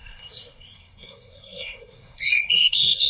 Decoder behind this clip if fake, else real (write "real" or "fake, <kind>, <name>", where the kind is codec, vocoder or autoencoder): fake, codec, SNAC